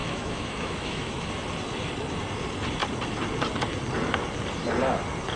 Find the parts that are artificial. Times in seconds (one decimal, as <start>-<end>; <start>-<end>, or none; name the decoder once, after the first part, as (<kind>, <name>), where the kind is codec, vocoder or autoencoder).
0.0-1.3 (autoencoder, DAC-VAE)